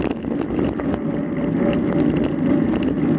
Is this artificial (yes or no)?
no